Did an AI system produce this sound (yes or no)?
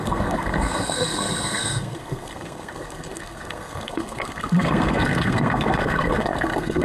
yes